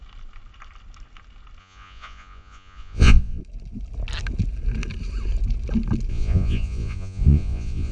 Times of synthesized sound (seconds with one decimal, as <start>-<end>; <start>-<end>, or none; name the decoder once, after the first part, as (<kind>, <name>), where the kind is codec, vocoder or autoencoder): 1.6-3.4 (vocoder, Vocos); 6.1-7.9